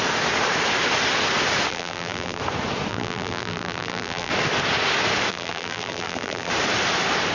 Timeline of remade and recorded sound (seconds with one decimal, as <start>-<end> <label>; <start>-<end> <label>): 0.0-1.7 recorded; 1.7-2.4 remade; 2.4-2.9 recorded; 2.9-4.3 remade; 4.3-5.3 recorded; 5.3-6.5 remade; 6.5-7.3 recorded